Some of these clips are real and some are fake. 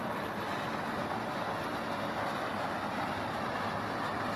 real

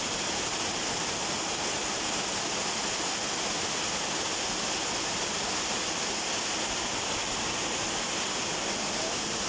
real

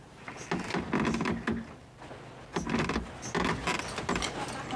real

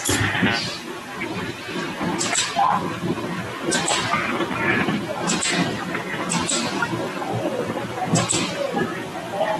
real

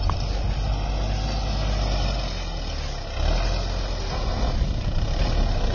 real